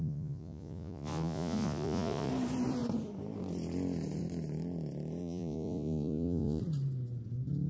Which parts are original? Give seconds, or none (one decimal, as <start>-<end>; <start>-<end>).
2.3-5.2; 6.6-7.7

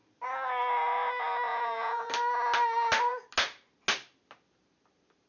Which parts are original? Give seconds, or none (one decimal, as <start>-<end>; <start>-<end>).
0.0-1.5; 2.1-5.3

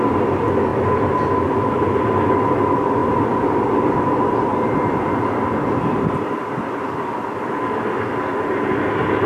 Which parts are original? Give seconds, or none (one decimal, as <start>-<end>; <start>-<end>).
0.0-9.3

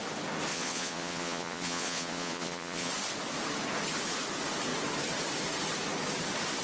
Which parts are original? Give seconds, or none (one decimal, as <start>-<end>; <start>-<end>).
0.0-0.5; 2.9-6.6

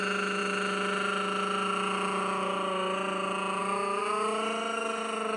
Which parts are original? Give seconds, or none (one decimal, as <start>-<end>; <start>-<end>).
0.0-5.4